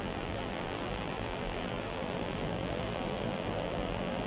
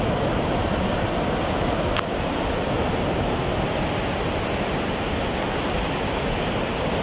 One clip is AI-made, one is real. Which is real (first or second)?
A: second